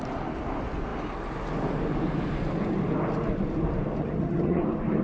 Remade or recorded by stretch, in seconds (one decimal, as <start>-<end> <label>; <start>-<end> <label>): 0.0-4.0 recorded; 4.0-4.6 remade; 4.6-5.0 recorded